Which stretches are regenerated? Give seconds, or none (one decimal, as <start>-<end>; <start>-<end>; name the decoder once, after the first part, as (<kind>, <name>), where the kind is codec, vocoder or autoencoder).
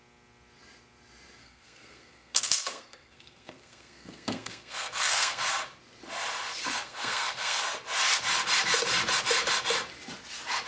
1.4-5.4 (codec, SNAC); 6.6-7.6